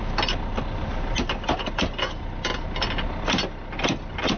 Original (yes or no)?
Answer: yes